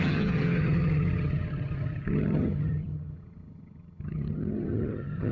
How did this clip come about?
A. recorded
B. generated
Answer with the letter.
B